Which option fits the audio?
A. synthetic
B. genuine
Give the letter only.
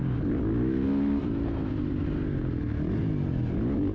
B